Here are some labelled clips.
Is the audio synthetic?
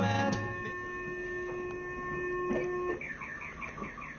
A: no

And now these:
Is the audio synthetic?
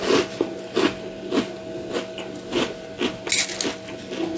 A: no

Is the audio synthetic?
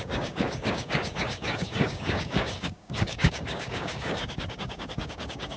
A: yes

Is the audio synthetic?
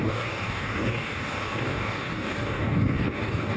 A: yes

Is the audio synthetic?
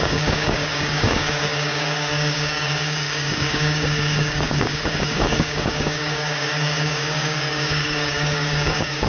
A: yes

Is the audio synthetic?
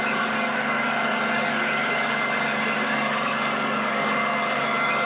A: yes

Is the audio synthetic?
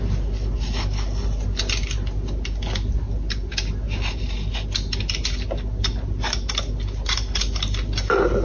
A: no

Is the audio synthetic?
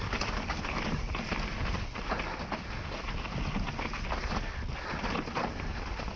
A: no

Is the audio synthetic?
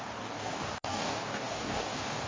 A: yes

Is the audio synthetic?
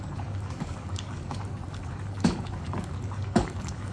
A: yes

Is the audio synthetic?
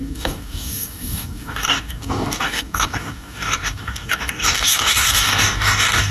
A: yes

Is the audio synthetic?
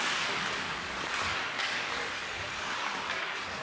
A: yes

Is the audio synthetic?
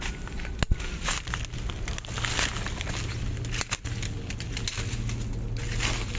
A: no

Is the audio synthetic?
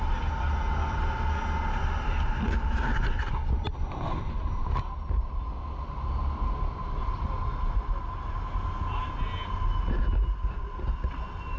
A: no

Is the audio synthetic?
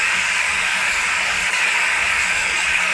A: yes